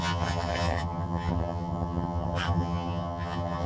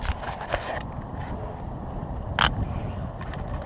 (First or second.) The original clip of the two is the second